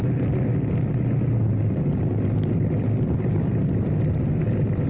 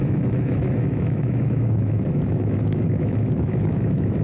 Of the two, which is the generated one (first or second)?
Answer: second